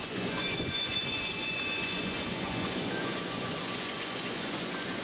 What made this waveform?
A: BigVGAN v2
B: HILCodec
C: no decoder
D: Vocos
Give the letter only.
D